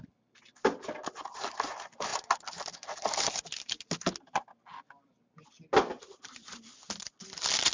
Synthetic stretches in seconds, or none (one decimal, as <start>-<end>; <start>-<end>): none